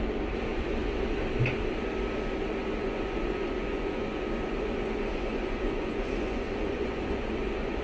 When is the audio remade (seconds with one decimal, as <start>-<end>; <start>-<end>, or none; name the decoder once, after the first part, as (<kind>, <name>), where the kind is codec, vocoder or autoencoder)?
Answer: 0.5-1.0 (vocoder, Vocos); 2.8-7.8